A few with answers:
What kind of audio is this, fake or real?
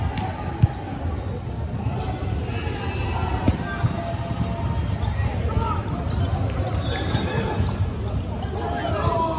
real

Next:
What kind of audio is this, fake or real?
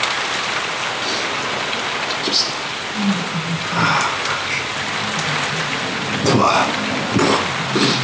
real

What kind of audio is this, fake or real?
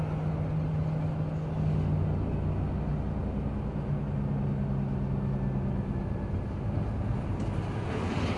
real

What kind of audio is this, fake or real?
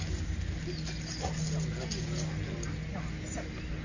real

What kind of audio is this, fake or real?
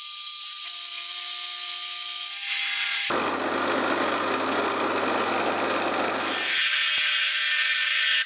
real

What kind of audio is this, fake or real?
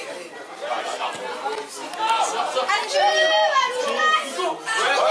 real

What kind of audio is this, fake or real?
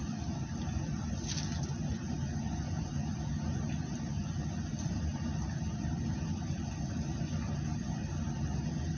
real